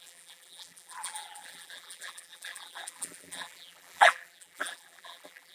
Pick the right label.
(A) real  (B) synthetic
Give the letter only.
B